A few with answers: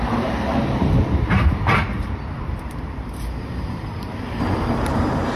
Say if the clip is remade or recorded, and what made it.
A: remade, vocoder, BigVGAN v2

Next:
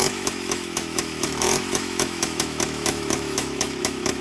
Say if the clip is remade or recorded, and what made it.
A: remade, autoencoder, DAC-VAE